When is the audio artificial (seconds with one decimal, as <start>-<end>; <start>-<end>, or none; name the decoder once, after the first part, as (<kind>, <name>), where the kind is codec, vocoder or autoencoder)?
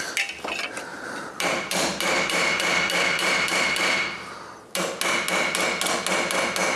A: 0.9-5.0 (vocoder, BigVGAN v2)